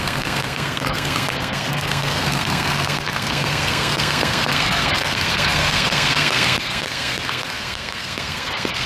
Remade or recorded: remade